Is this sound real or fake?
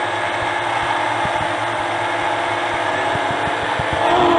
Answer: real